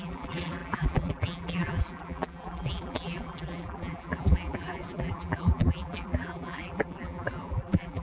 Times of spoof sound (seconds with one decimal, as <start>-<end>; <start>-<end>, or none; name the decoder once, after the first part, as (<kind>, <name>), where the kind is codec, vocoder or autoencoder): 0.0-8.0 (vocoder, BigVGAN v2)